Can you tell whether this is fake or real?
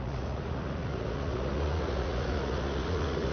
fake